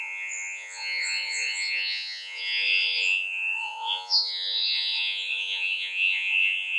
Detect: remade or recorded remade